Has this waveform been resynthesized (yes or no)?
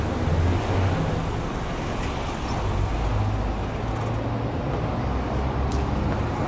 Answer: no